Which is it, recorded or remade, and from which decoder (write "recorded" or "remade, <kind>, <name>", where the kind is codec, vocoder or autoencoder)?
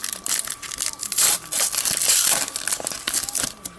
recorded